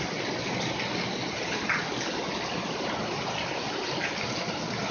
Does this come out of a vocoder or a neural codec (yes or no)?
no